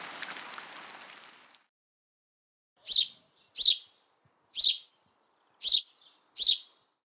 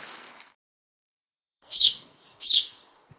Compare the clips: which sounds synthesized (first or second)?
second